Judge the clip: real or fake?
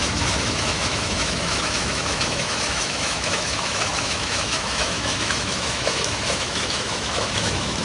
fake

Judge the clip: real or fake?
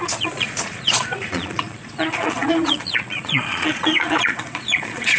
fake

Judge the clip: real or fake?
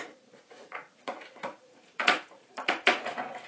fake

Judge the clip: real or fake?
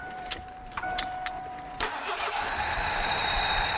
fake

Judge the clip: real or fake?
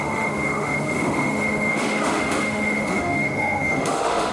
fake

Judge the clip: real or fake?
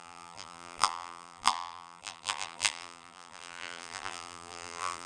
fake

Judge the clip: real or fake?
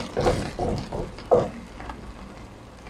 real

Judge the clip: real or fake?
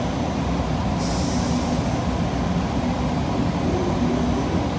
real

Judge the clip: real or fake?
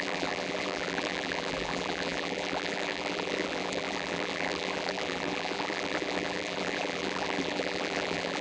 fake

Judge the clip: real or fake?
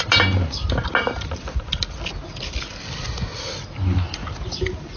real